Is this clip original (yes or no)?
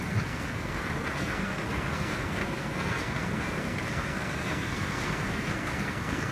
no